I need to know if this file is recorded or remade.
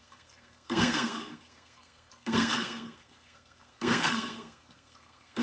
remade